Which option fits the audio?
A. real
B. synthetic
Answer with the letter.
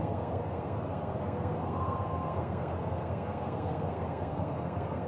B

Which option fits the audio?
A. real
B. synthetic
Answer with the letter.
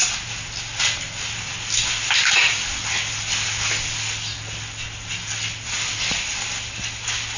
A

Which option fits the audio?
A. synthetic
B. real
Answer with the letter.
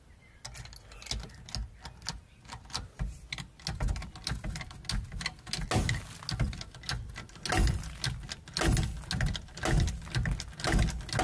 B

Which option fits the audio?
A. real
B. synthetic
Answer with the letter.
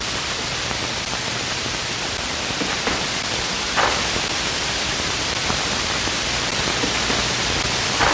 B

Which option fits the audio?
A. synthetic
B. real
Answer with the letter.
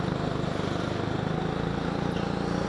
B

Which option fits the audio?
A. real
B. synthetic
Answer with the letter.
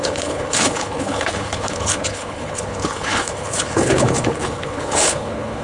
B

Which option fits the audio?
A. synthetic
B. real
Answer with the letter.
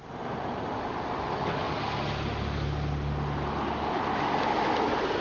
B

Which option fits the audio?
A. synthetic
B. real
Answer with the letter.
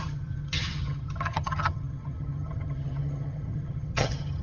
A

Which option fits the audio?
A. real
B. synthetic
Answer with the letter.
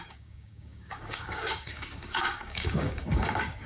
B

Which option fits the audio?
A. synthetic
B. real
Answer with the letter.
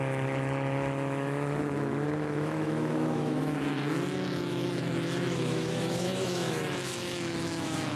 A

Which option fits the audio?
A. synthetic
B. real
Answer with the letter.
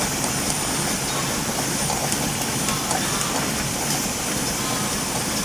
B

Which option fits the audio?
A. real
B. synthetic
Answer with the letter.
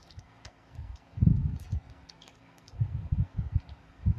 B